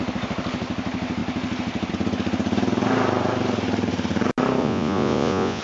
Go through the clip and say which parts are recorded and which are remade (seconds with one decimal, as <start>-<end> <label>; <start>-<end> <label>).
0.0-4.6 recorded; 4.6-5.6 remade